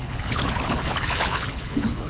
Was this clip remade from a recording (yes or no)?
yes